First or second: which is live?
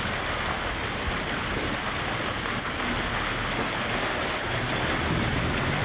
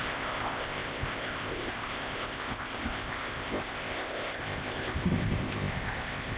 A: first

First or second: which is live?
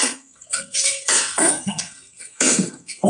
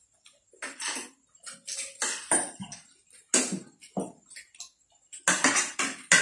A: second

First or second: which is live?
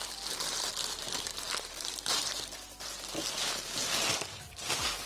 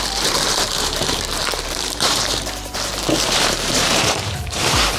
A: first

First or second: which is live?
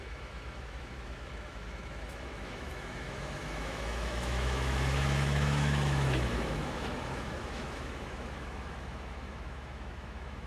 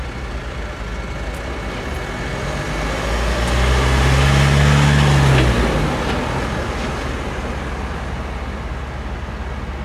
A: second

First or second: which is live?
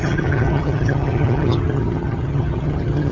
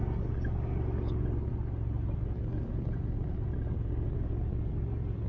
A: second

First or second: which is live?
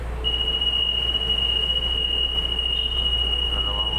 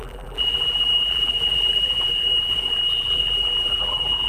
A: first